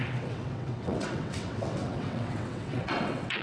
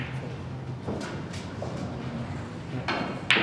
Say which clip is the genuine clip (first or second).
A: second